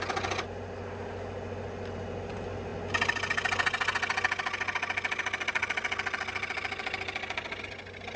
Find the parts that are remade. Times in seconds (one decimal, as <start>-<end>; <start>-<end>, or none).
none